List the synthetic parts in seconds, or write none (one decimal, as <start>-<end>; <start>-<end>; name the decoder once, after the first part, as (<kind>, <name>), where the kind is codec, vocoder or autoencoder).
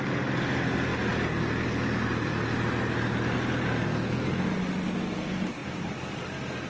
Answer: 5.6-6.2 (vocoder, BigVGAN v2)